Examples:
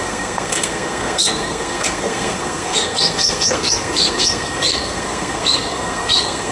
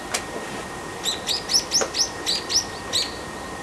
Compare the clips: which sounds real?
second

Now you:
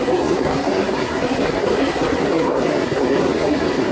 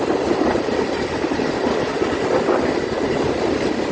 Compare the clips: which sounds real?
second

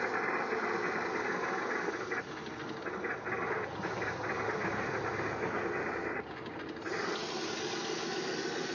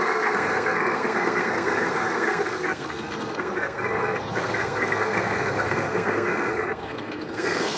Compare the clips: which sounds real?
first